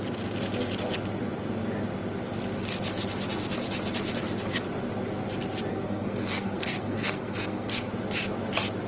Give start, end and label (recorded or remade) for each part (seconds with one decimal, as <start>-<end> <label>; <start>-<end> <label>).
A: 0.0-5.7 recorded; 5.7-7.9 remade; 7.9-8.9 recorded